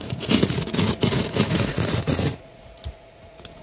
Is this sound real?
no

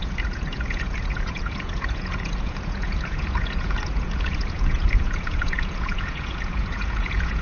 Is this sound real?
no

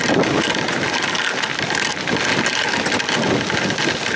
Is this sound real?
yes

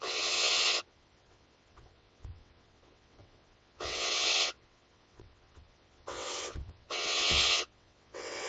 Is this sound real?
no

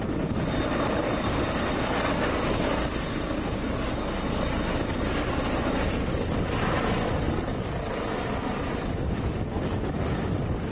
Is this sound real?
yes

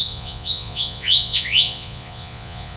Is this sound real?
no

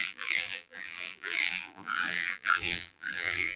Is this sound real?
no